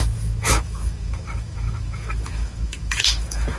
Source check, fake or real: fake